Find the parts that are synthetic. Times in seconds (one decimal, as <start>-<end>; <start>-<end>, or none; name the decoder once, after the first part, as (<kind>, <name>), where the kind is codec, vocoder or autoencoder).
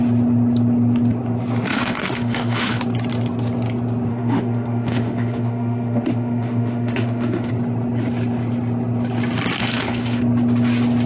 1.7-2.8 (autoencoder, DAC-VAE); 4.1-7.5; 9.6-10.2